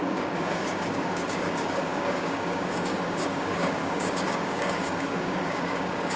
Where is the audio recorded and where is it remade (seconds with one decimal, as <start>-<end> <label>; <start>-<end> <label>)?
0.0-6.2 remade